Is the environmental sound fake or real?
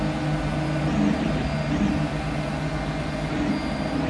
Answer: real